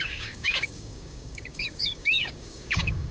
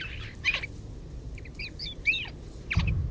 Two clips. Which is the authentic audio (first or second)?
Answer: second